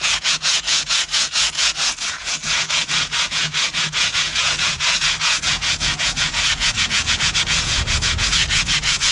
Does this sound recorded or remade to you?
remade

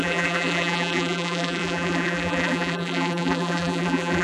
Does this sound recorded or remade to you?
remade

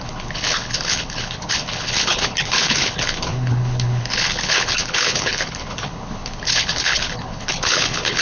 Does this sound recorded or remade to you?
remade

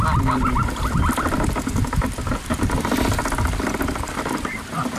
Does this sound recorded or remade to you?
recorded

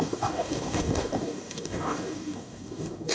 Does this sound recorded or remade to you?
remade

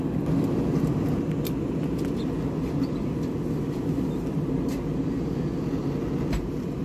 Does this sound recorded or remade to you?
recorded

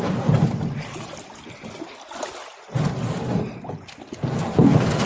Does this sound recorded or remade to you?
recorded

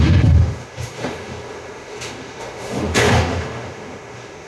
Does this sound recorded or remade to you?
remade